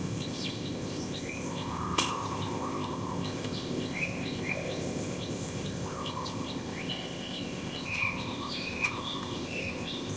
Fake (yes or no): yes